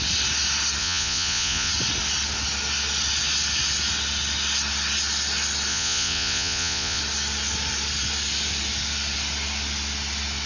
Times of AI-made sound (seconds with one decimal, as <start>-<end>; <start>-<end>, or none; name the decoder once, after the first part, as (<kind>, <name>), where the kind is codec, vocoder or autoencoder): 0.8-1.7 (vocoder, Vocos); 5.7-7.0